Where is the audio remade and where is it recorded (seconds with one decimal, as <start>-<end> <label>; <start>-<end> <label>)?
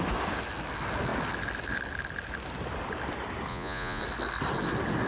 0.0-3.5 recorded; 3.5-4.0 remade; 4.0-5.1 recorded